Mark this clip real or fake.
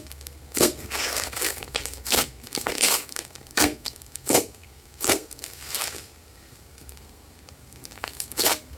fake